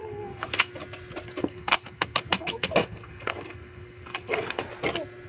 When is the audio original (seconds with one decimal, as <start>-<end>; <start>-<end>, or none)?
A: 0.7-1.4; 4.6-5.3